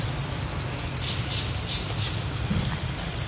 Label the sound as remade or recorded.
recorded